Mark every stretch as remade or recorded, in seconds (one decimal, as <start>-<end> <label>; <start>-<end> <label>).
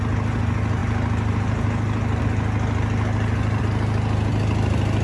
0.0-5.0 recorded